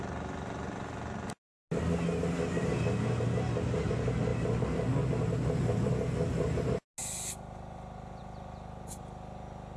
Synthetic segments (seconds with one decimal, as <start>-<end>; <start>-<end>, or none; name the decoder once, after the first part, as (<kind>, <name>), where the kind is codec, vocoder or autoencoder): none